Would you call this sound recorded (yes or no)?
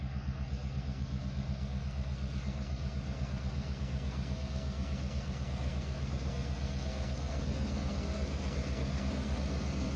no